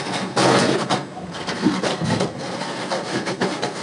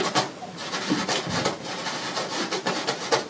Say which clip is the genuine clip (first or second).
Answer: second